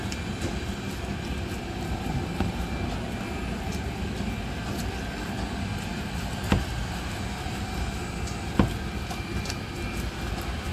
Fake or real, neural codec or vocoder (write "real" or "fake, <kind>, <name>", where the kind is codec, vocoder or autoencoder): real